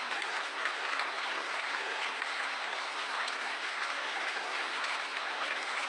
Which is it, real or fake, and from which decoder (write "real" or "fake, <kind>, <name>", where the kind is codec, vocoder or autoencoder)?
fake, codec, SNAC